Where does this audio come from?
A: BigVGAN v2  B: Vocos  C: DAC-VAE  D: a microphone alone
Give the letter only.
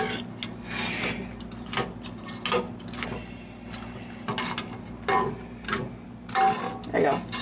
D